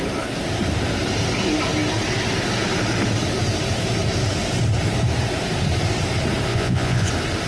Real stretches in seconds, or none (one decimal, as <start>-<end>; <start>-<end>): 0.0-6.5; 7.1-7.5